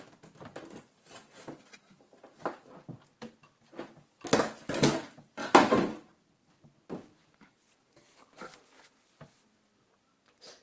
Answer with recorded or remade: recorded